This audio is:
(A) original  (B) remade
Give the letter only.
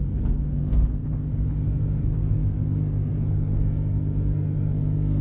B